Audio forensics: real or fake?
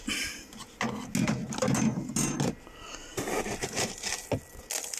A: real